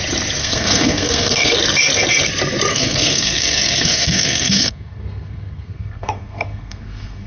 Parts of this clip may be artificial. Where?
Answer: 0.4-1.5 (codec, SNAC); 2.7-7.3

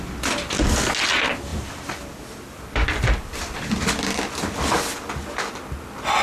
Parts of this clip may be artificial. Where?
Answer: 1.5-3.7 (vocoder, BigVGAN v2)

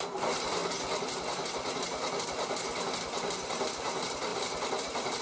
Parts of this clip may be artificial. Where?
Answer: none

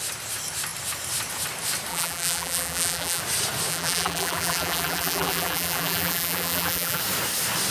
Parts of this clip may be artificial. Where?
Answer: 1.9-3.2 (vocoder, BigVGAN v2); 3.7-7.0